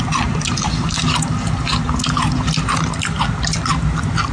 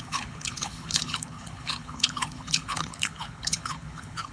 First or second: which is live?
first